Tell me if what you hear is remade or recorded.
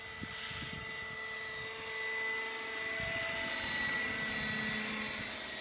recorded